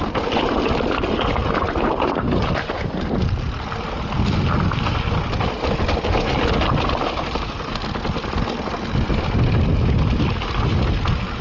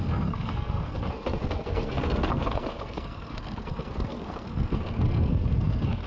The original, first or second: first